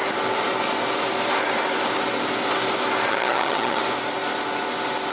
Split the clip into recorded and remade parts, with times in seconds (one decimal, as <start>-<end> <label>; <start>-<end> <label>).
0.0-3.1 recorded; 3.1-3.8 remade; 3.8-5.1 recorded